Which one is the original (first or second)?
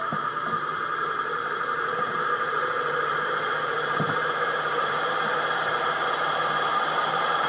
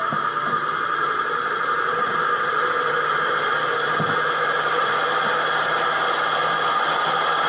second